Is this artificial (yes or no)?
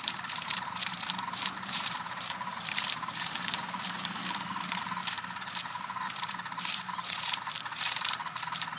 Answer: yes